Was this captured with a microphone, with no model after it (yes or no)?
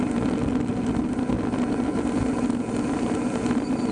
yes